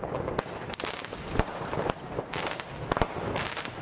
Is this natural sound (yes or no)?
yes